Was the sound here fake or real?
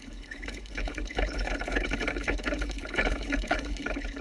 fake